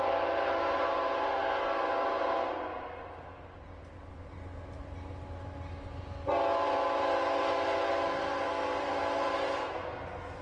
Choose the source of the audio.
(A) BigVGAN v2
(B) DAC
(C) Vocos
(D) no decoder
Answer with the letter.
D